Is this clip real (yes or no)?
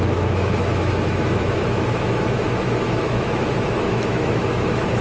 no